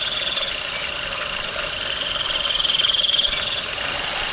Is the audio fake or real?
fake